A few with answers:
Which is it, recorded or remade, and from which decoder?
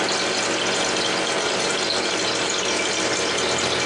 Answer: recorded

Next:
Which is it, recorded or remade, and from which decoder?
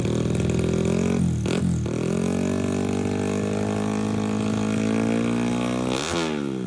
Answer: recorded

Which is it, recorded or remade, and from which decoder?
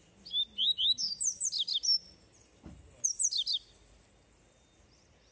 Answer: recorded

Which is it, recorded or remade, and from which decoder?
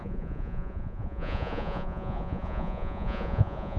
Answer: remade, vocoder, Vocos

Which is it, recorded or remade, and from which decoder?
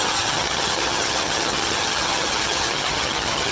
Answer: remade, vocoder, HiFi-GAN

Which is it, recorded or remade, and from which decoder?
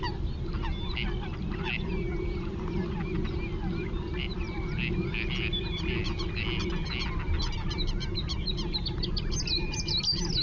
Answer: recorded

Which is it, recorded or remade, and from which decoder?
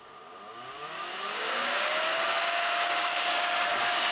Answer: remade, codec, DAC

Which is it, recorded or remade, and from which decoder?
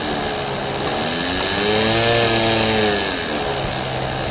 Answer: recorded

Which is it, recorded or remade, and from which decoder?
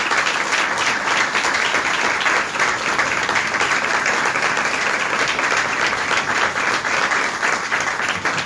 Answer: recorded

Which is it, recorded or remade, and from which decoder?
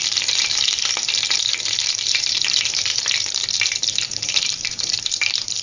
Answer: remade, vocoder, BigVGAN v2